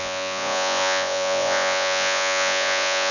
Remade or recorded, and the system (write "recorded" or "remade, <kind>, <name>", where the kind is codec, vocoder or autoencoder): remade, vocoder, Vocos